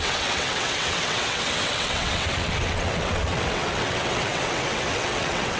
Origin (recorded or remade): remade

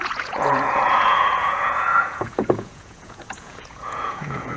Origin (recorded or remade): remade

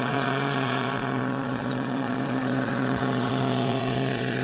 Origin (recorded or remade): remade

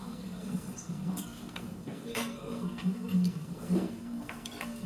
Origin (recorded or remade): remade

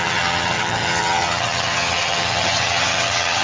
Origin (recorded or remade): remade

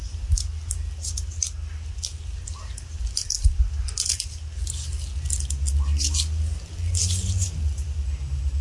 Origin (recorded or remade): recorded